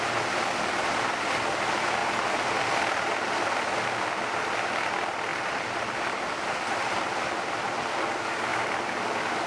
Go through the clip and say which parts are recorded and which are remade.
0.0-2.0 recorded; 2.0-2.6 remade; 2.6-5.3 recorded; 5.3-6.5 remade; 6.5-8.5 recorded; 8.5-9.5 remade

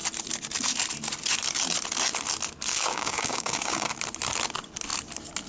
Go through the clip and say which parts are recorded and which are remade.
0.0-2.7 recorded; 2.7-3.9 remade; 3.9-5.5 recorded

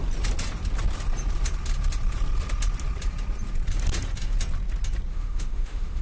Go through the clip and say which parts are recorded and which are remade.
0.0-5.1 recorded; 5.1-6.0 remade

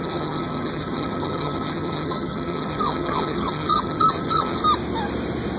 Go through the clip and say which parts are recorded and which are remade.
0.0-4.6 remade; 4.6-5.6 recorded

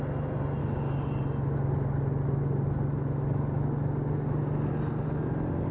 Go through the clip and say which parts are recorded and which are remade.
0.0-0.6 recorded; 0.6-1.2 remade; 1.2-5.7 recorded

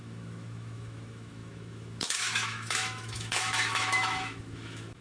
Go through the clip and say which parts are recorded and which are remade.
0.0-5.0 remade